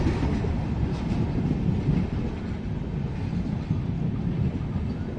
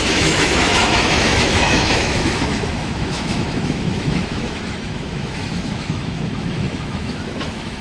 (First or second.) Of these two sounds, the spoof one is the second